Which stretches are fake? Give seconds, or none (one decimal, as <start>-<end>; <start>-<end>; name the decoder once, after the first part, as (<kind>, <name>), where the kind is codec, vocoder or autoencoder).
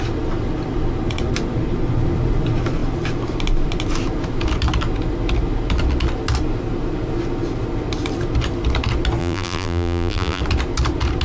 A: 9.2-10.4 (vocoder, BigVGAN v2)